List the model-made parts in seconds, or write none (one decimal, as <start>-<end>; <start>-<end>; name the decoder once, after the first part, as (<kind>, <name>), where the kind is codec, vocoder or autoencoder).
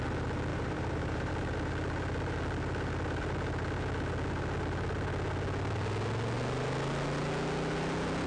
0.5-1.3 (vocoder, BigVGAN v2)